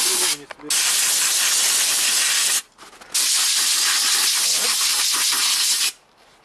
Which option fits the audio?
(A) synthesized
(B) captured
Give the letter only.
B